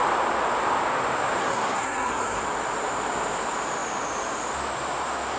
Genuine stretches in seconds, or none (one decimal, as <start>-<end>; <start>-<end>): 0.0-1.4; 2.4-5.4